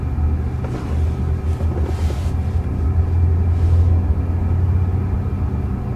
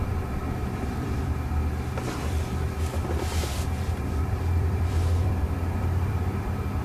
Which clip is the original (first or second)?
first